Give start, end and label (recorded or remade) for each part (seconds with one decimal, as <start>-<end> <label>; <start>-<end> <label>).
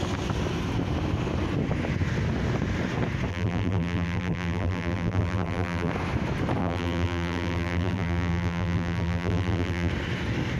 0.0-3.3 recorded; 3.3-5.9 remade; 5.9-6.6 recorded; 6.6-9.9 remade; 9.9-10.6 recorded